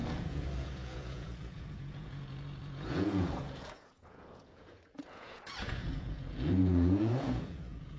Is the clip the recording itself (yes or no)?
no